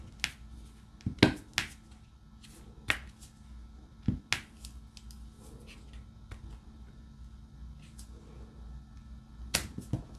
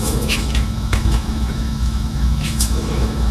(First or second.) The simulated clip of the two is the second